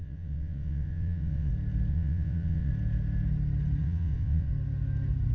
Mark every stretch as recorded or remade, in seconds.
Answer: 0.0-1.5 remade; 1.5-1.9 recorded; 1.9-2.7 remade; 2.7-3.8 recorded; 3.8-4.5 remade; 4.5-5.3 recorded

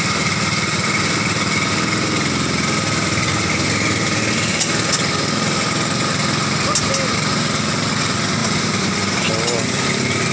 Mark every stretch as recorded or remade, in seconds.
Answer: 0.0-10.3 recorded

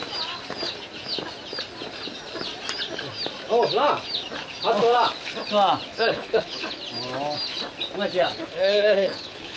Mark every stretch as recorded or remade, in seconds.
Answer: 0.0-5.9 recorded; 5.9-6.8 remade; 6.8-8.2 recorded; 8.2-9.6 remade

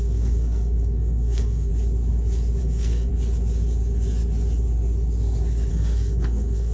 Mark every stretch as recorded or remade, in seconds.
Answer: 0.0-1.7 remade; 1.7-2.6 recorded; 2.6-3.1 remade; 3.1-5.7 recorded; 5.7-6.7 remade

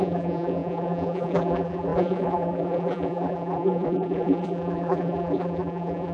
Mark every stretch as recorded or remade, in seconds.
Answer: 0.0-6.1 remade